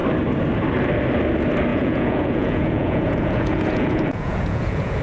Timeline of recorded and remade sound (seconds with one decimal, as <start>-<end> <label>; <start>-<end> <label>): 0.0-1.7 recorded; 1.7-5.0 remade